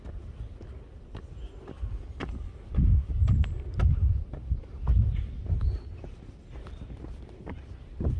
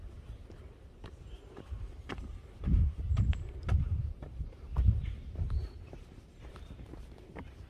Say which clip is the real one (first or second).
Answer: first